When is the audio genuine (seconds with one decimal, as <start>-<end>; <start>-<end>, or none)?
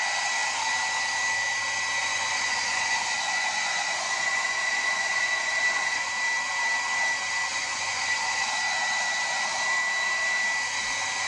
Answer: 0.0-2.0; 6.1-7.5; 8.5-11.3